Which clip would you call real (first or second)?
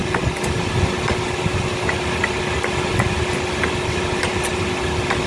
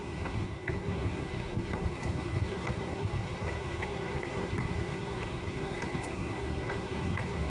first